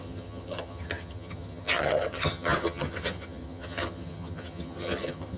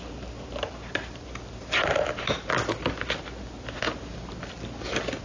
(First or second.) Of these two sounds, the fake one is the first